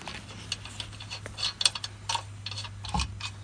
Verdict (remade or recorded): recorded